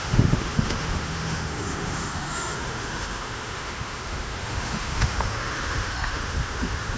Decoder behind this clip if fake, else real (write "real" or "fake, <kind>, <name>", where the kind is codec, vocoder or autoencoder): fake, autoencoder, DAC-VAE